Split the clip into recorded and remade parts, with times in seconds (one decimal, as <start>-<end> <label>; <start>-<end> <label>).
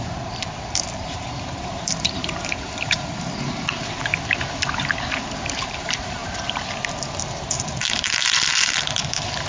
0.0-4.1 remade; 4.1-5.6 recorded; 5.6-9.5 remade